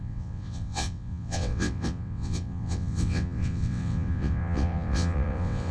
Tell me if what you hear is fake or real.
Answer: fake